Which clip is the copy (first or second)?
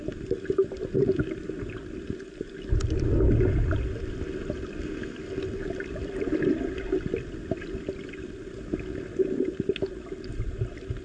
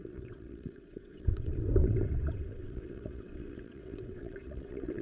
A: second